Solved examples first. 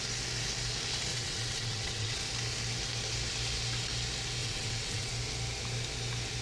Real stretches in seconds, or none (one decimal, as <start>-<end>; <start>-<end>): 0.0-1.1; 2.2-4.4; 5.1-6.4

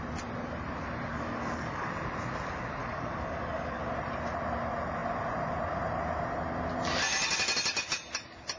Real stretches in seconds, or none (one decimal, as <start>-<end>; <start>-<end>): 0.0-1.1; 1.9-2.8; 3.8-8.6

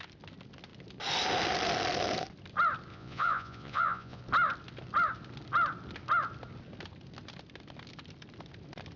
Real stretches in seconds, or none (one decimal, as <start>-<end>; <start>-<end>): 0.0-2.9; 4.2-9.0

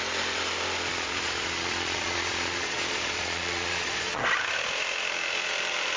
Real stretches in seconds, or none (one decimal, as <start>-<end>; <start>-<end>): 0.0-0.9; 4.2-6.0